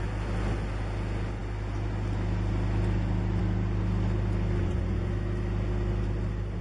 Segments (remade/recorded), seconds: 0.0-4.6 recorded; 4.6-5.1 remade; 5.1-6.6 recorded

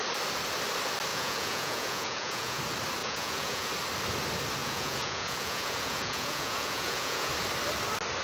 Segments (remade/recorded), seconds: 0.0-1.1 recorded; 1.1-2.6 remade; 2.6-3.0 recorded; 3.0-3.7 remade; 3.7-4.6 recorded; 4.6-7.3 remade; 7.3-8.2 recorded

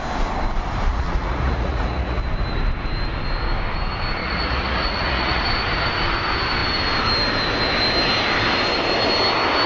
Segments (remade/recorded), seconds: 0.0-0.9 recorded; 0.9-2.2 remade; 2.2-4.2 recorded; 4.2-5.4 remade; 5.4-9.7 recorded